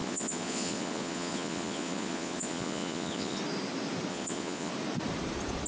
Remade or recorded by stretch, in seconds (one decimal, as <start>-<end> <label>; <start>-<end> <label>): 0.0-3.4 remade; 3.4-4.1 recorded; 4.1-4.7 remade; 4.7-5.7 recorded